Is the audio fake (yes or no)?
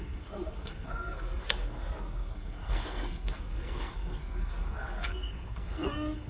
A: yes